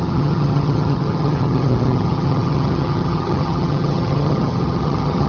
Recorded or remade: remade